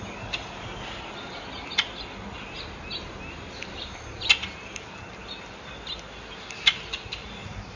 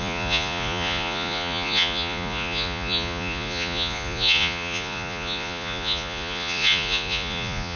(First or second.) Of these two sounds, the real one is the first